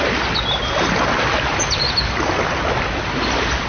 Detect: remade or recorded recorded